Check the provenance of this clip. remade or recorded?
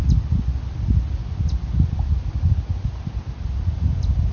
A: recorded